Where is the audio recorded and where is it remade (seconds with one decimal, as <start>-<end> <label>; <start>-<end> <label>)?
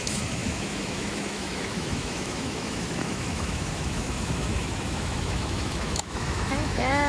0.0-7.1 remade